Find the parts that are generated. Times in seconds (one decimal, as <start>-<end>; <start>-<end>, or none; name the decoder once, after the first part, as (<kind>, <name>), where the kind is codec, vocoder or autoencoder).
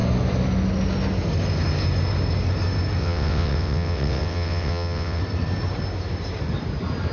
3.0-5.2 (vocoder, WaveNeXt)